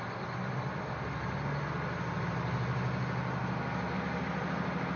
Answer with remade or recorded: recorded